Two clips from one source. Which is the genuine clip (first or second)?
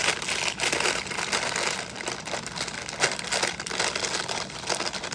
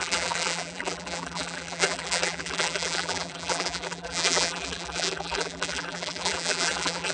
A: first